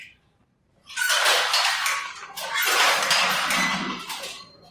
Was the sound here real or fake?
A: real